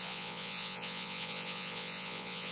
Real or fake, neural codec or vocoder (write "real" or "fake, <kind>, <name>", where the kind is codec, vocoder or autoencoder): fake, vocoder, Vocos